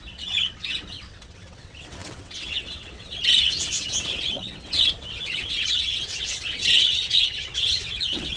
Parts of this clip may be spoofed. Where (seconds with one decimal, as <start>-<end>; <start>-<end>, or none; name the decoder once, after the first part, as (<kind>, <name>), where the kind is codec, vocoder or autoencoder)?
0.0-8.4 (vocoder, WaveNeXt)